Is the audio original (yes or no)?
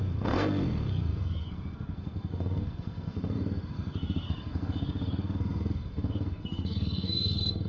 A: no